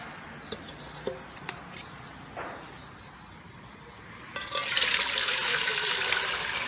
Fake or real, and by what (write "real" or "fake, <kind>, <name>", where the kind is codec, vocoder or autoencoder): real